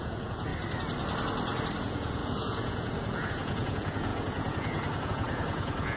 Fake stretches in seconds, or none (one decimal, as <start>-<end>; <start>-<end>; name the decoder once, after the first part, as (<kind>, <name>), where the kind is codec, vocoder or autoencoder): 0.0-0.5 (vocoder, Vocos); 1.8-6.0